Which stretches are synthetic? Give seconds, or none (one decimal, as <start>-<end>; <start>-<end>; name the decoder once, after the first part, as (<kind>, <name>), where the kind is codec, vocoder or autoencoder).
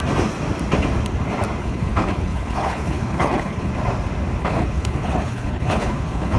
1.6-3.7 (codec, HILCodec); 4.4-6.4